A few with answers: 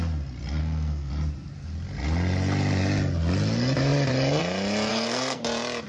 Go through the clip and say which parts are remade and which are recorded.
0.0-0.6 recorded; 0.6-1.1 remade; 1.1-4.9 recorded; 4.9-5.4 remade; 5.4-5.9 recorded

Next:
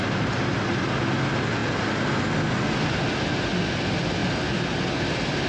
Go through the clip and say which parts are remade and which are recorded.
0.0-5.5 recorded

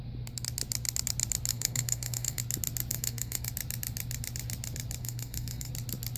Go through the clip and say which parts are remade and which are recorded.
0.0-1.5 recorded; 1.5-2.4 remade; 2.4-2.9 recorded; 2.9-3.5 remade; 3.5-5.0 recorded; 5.0-5.7 remade; 5.7-6.2 recorded